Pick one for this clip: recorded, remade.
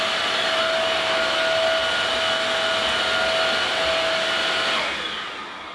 recorded